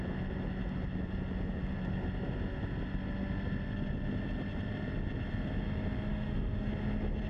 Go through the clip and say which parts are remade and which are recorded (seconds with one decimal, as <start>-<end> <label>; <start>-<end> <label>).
0.0-6.1 recorded; 6.1-6.7 remade; 6.7-7.3 recorded